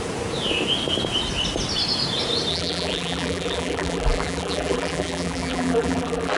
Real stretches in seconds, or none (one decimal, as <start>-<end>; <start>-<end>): 0.0-2.5